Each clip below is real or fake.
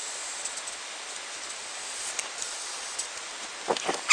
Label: real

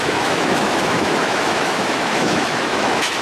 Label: fake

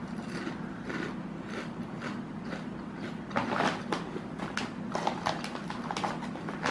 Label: real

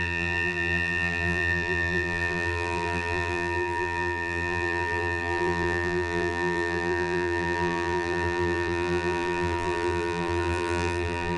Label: fake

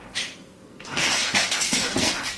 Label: fake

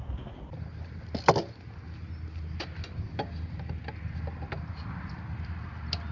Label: real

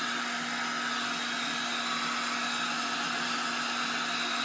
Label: real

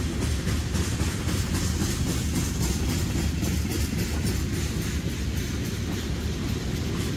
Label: real